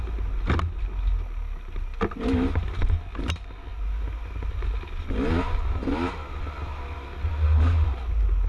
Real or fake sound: real